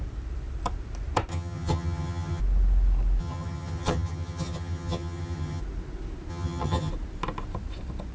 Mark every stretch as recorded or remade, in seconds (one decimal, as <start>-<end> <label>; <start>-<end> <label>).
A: 0.0-1.3 recorded; 1.3-2.4 remade; 2.4-3.2 recorded; 3.2-5.6 remade; 5.6-6.3 recorded; 6.3-6.9 remade; 6.9-8.1 recorded